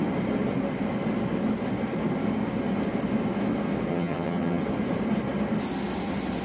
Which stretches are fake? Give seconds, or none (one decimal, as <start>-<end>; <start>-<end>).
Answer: 3.9-4.6